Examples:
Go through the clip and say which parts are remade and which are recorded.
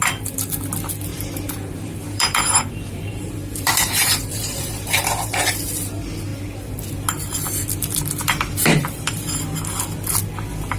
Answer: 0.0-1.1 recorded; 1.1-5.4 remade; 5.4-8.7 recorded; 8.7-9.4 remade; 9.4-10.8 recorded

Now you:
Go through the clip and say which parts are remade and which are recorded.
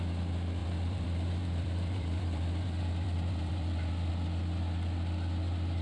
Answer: 0.0-0.6 recorded; 0.6-4.1 remade; 4.1-5.8 recorded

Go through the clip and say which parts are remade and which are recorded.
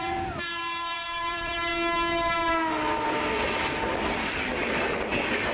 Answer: 0.0-1.7 remade; 1.7-5.0 recorded; 5.0-5.5 remade